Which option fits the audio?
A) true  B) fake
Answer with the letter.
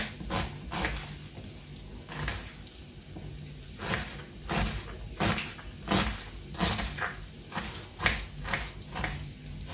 A